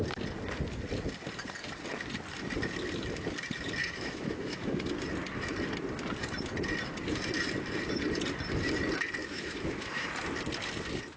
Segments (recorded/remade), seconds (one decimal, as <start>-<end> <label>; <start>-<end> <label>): 0.0-3.8 recorded; 3.8-4.9 remade; 4.9-9.2 recorded; 9.2-10.1 remade; 10.1-11.2 recorded